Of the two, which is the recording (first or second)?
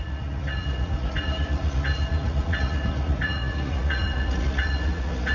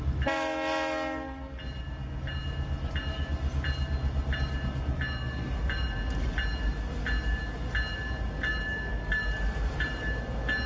second